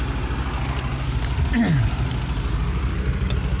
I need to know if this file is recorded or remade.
recorded